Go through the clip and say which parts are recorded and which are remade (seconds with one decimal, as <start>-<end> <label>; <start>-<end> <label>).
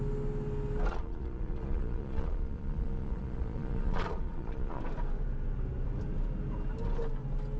0.0-0.9 recorded; 0.9-4.8 remade; 4.8-7.6 recorded